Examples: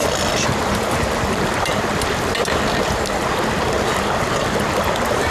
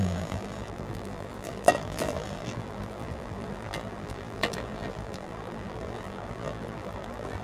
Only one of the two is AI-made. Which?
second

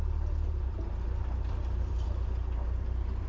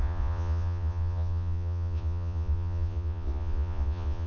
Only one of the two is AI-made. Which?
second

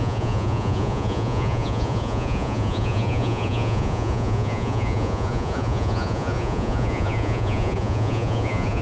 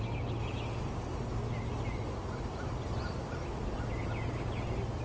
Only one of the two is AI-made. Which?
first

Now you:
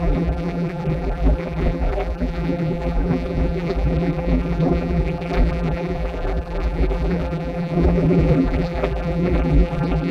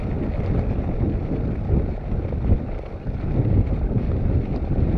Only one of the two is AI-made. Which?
first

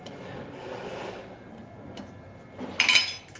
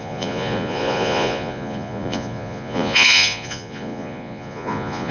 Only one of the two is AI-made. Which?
second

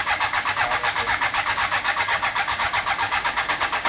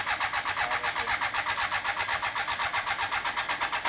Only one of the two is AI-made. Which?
first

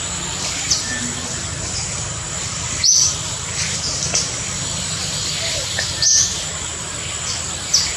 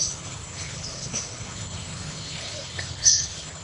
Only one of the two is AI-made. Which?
second